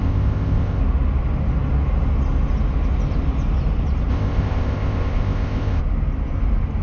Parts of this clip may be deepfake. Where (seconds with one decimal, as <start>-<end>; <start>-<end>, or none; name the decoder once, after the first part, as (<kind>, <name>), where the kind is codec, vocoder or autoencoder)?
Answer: 0.0-0.8 (codec, ZipCodec); 4.1-5.8